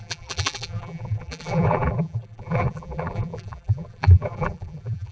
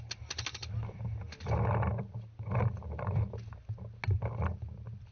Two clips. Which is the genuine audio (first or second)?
second